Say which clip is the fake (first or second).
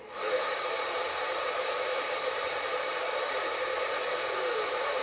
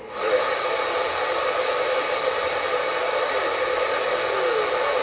first